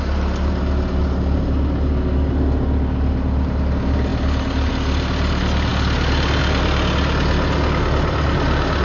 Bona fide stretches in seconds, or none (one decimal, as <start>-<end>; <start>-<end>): 0.0-8.8